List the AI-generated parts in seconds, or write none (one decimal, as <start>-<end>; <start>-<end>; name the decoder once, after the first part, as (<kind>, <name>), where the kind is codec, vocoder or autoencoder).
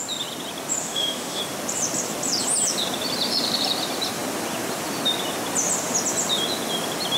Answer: 0.8-1.4 (autoencoder, DAC-VAE)